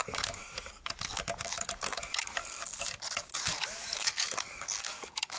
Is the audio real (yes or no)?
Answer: no